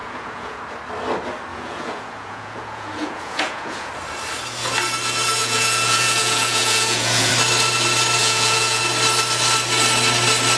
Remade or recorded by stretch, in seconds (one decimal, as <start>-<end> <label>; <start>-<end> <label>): 0.0-0.6 remade; 0.6-1.5 recorded; 1.5-3.9 remade; 3.9-5.4 recorded; 5.4-7.3 remade; 7.3-8.2 recorded; 8.2-8.8 remade; 8.8-10.6 recorded